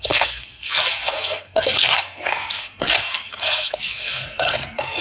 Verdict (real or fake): fake